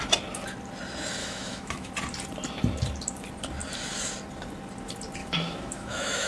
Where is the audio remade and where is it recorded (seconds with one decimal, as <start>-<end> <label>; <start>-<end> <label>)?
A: 0.0-1.2 recorded; 1.2-1.9 remade; 1.9-5.2 recorded; 5.2-6.3 remade